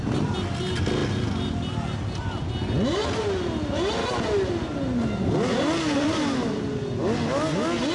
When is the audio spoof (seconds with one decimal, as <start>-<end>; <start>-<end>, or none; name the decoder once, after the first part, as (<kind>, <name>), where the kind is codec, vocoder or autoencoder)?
none